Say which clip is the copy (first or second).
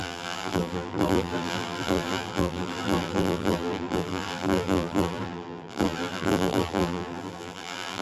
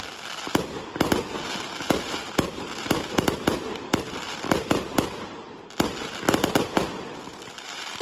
first